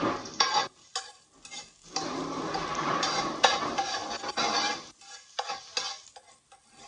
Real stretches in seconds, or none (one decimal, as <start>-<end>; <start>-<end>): 0.9-1.9; 4.0-6.9